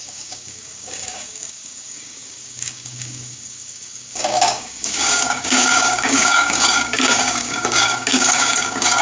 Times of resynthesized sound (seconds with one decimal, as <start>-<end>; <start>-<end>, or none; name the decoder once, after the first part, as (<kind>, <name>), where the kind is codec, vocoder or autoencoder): 0.0-9.0 (codec, DAC)